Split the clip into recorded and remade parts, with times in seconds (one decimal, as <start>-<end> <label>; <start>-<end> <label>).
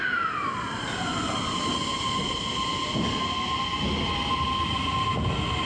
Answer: 0.0-5.7 recorded